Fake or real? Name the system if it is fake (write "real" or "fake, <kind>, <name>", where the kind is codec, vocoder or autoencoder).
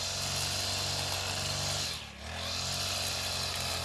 real